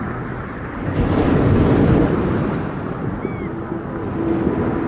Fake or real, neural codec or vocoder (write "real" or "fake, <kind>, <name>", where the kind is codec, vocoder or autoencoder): real